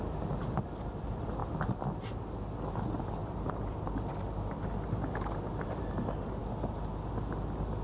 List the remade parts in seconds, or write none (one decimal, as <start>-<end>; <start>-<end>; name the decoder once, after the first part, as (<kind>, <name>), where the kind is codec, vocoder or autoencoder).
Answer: 3.2-5.8 (vocoder, BigVGAN v2)